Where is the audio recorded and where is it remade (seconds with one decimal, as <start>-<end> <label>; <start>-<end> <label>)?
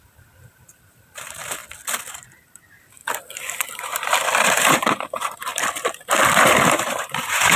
0.0-1.6 remade; 1.6-2.1 recorded; 2.1-3.0 remade; 3.0-4.5 recorded; 4.5-5.5 remade; 5.5-6.7 recorded; 6.7-7.6 remade